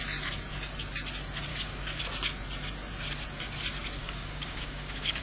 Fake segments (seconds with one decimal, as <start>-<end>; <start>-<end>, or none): 1.5-2.0; 4.0-5.2